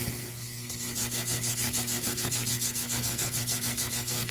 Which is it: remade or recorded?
remade